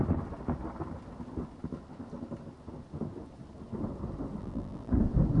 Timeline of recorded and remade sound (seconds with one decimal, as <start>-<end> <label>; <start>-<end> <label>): 0.0-4.4 recorded; 4.4-4.9 remade; 4.9-5.4 recorded